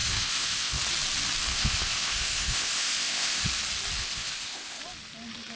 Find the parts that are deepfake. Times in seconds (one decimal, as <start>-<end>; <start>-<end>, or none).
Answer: 0.0-0.8; 1.5-3.4; 4.0-4.8